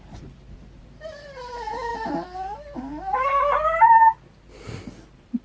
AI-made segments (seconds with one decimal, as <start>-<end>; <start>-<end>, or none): none